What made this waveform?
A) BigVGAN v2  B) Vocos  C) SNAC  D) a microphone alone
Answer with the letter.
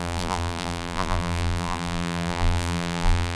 A